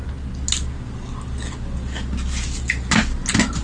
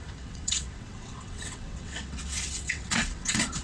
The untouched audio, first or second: first